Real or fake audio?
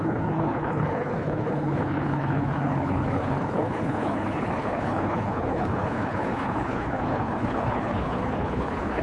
fake